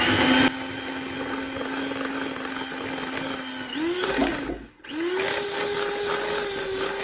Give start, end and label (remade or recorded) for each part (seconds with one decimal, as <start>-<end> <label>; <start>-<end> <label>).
0.0-7.0 recorded